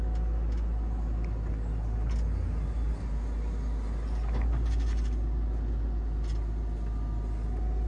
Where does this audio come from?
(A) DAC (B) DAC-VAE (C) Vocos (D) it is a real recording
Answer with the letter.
D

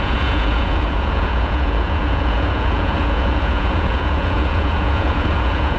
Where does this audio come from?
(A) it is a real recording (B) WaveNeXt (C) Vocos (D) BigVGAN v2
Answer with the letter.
C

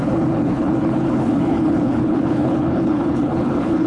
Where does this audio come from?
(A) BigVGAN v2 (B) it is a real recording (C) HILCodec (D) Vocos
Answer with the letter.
C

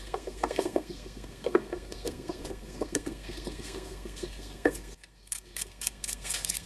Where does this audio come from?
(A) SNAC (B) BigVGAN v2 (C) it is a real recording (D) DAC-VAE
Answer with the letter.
A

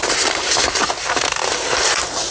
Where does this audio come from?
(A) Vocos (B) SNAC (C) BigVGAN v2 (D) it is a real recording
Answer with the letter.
D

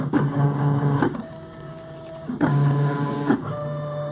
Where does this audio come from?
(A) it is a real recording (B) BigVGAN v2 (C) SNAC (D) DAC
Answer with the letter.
D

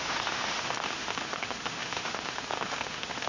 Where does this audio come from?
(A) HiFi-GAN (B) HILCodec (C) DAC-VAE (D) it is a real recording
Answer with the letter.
C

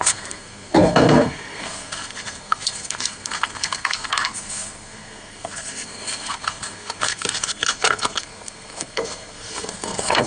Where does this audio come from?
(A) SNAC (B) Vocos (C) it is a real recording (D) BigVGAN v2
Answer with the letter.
A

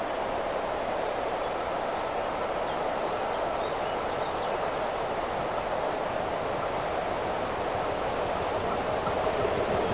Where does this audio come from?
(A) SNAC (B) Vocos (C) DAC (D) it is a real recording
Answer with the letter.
D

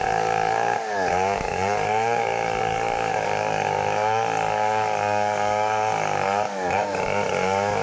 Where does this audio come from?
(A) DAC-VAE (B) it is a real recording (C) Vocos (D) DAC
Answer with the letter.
D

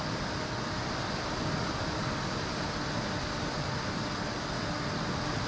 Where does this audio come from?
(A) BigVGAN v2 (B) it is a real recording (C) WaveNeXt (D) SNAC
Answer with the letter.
B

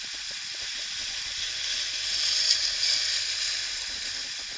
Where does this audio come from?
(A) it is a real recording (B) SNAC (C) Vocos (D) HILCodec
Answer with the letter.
A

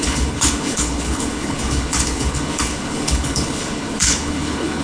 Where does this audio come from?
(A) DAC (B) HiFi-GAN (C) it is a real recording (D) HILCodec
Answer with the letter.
D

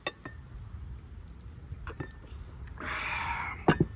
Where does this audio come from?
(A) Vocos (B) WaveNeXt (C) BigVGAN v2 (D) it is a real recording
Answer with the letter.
D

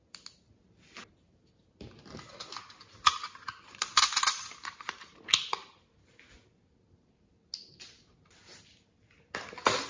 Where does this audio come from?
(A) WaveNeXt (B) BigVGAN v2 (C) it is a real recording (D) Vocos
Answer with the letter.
C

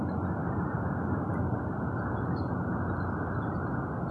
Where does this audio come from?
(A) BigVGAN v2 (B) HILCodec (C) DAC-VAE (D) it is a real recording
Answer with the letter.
D